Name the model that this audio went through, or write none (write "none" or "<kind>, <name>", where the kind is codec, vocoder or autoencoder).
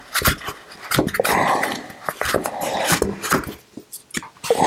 none